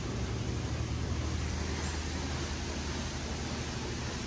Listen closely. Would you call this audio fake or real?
real